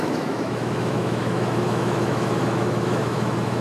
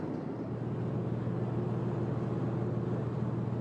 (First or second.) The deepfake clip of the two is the first